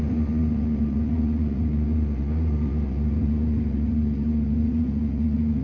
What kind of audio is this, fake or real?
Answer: fake